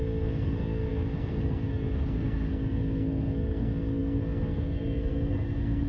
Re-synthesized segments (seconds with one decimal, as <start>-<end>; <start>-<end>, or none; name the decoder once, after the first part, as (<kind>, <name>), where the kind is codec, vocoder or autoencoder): 0.0-5.9 (codec, SNAC)